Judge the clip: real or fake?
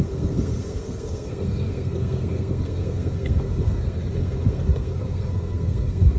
fake